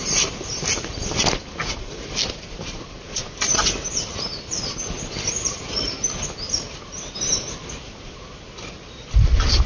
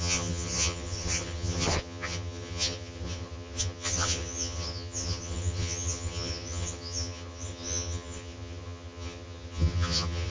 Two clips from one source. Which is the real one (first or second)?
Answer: first